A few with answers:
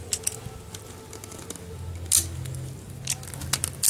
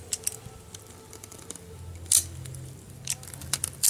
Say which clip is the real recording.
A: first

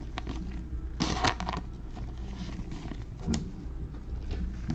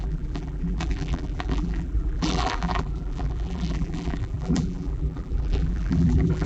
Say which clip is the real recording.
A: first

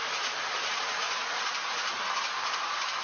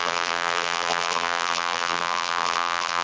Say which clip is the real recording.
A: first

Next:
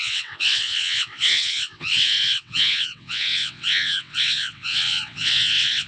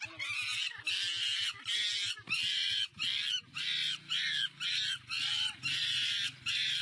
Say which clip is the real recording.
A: second